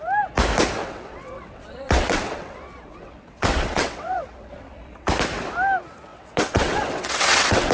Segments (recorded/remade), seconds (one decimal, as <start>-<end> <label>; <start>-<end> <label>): 0.0-0.8 recorded; 0.8-5.1 remade; 5.1-6.1 recorded; 6.1-7.7 remade